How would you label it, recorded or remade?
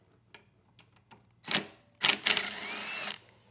recorded